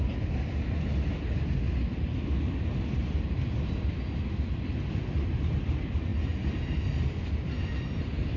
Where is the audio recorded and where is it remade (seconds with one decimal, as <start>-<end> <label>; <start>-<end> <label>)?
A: 0.0-8.4 recorded